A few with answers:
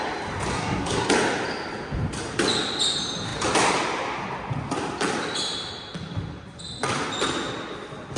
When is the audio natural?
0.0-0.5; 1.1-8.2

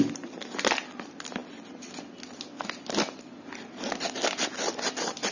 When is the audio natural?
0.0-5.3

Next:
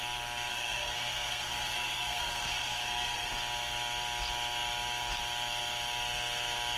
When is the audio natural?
0.0-0.5; 3.3-6.8